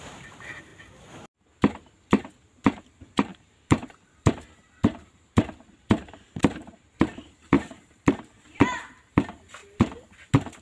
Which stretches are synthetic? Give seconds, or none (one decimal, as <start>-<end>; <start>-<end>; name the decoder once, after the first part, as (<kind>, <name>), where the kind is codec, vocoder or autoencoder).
0.0-0.7 (vocoder, BigVGAN v2); 2.1-9.6